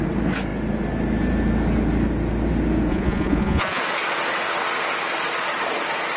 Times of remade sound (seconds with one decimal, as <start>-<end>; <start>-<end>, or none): 2.9-3.8